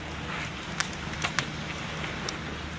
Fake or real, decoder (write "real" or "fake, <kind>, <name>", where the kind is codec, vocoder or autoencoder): real